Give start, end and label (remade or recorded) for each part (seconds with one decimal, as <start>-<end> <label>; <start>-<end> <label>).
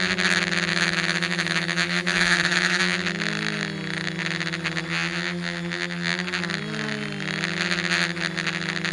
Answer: 0.0-0.7 recorded; 0.7-2.8 remade; 2.8-8.9 recorded